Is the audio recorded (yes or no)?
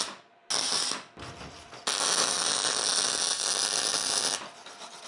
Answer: yes